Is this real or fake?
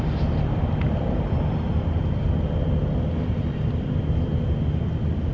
real